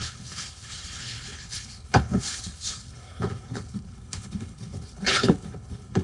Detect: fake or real fake